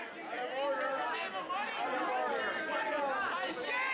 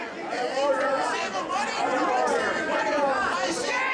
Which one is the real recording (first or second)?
first